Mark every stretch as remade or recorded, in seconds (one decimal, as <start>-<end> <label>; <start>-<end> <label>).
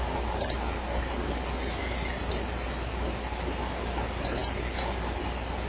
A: 0.0-5.7 recorded